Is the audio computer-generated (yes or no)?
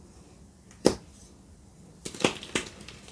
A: no